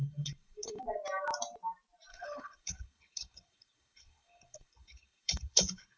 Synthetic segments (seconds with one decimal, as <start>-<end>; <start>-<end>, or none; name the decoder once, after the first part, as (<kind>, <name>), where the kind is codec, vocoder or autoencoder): 0.0-0.8 (codec, HILCodec); 2.1-6.0